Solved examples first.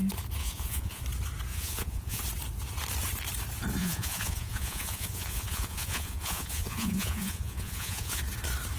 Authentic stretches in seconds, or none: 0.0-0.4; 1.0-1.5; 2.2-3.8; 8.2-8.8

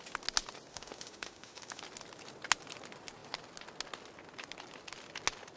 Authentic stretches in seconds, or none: 0.0-0.7; 1.8-5.6

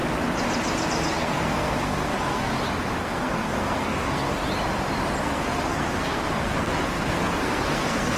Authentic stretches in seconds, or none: 0.0-1.2; 2.5-3.0; 4.4-5.2

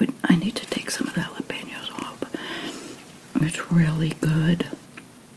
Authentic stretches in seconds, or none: 0.0-5.4

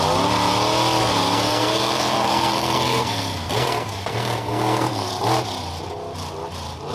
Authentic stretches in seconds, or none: 0.0-1.0; 5.1-6.9

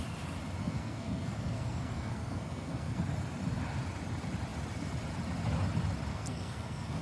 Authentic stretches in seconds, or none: 0.0-0.6; 3.0-6.1

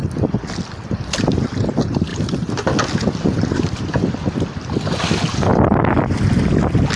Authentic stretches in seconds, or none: 0.0-2.1; 3.7-7.0

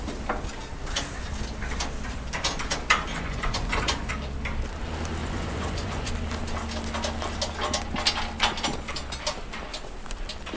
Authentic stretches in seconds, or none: 0.0-3.1; 4.1-5.2; 6.1-10.6